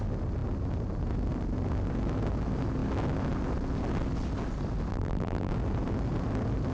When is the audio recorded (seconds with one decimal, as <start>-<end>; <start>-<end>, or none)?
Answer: 0.0-4.9; 5.5-6.7